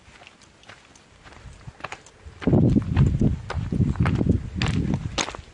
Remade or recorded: recorded